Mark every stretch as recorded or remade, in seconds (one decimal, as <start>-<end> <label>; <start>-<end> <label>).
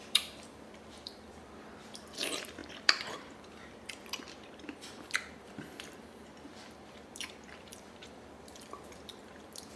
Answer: 0.0-9.8 remade